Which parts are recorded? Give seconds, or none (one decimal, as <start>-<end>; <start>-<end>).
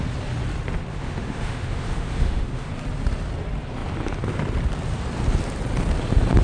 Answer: 0.0-0.9; 2.7-6.4